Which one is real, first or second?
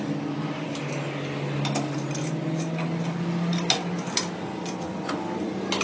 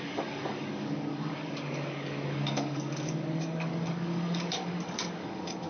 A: first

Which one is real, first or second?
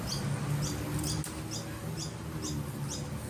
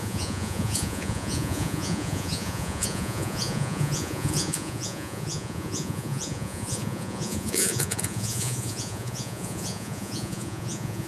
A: first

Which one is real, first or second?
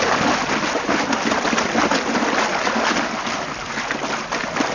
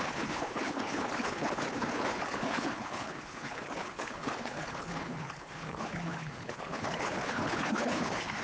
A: first